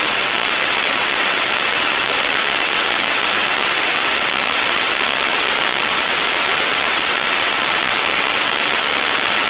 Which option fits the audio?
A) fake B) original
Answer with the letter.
A